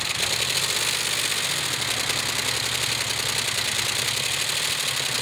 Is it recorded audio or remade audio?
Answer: recorded